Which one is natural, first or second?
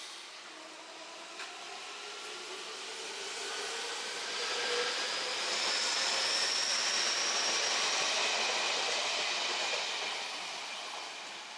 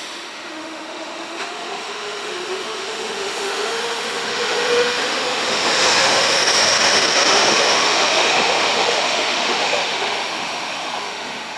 first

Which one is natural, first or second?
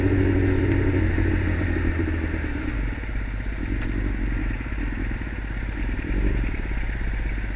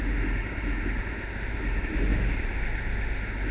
first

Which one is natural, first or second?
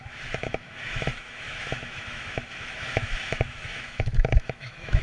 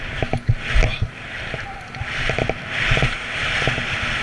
second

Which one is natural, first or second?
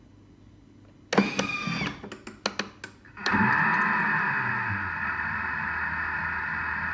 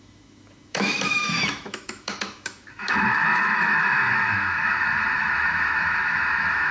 first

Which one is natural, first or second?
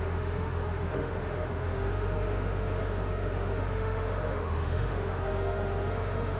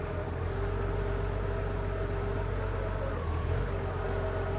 second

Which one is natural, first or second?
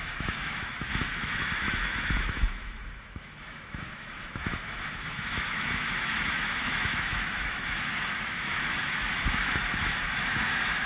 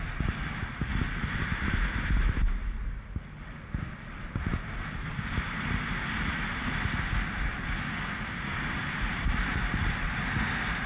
second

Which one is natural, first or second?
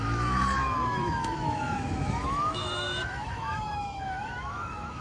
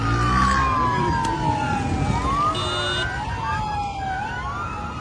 second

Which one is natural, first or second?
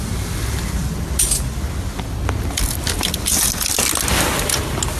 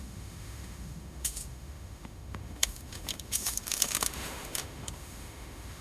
first